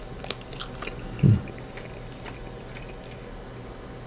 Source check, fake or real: real